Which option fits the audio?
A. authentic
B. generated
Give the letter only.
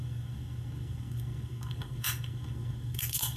B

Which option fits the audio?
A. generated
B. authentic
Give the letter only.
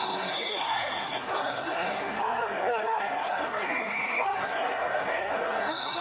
A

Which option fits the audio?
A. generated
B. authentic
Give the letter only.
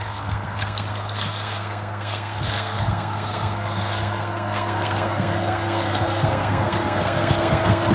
A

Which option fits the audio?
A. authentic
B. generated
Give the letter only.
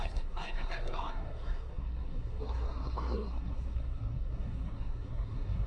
B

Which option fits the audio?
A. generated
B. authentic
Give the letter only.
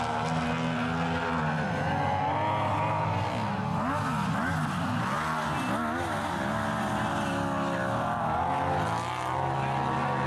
B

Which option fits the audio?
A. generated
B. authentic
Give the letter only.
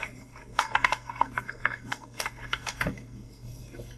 A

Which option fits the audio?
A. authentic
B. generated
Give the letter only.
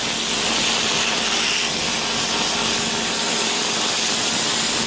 A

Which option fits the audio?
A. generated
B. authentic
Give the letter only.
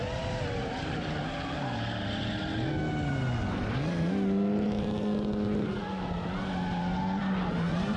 B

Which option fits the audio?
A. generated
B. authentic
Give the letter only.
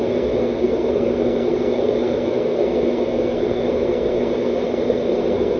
A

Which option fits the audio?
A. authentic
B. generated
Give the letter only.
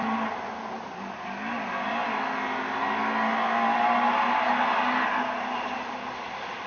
A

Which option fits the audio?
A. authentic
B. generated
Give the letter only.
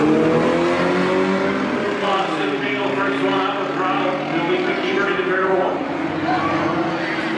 A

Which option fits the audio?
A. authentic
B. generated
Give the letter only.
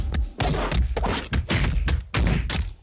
A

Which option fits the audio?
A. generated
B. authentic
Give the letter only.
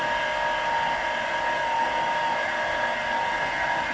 B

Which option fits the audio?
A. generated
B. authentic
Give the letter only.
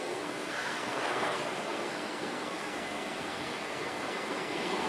A